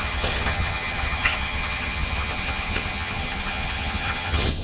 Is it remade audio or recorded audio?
remade